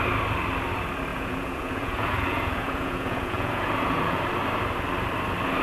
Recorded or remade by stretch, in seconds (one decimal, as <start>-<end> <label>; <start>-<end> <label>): 0.0-1.1 recorded; 1.1-4.2 remade; 4.2-5.6 recorded